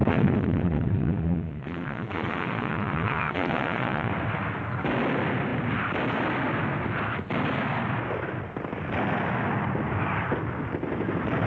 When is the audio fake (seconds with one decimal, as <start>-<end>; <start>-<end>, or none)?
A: 0.0-4.1